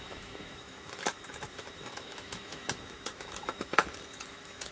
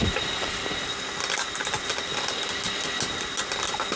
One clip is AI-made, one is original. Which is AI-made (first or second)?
first